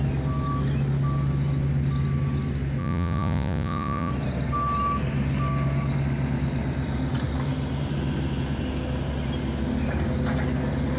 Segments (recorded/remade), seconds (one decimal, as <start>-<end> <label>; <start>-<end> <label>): 0.0-2.8 recorded; 2.8-4.1 remade; 4.1-11.0 recorded